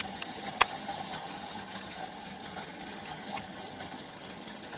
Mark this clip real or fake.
fake